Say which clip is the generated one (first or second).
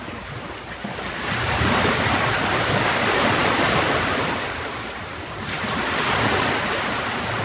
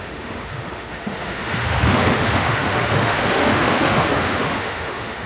second